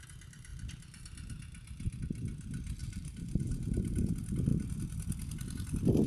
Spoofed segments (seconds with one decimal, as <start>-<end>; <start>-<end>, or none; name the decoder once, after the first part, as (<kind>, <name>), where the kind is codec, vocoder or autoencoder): 2.8-4.1 (vocoder, BigVGAN v2)